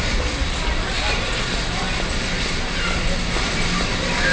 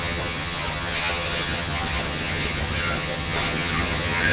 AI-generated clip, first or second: second